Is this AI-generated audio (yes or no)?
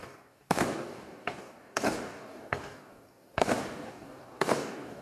yes